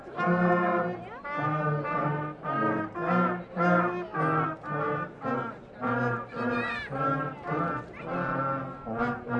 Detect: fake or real real